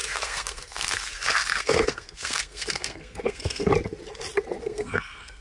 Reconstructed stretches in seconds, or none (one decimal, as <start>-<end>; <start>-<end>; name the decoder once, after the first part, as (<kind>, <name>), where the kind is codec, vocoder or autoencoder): 0.0-3.7 (codec, SNAC); 4.6-5.4